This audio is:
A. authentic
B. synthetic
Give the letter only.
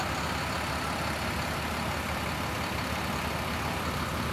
A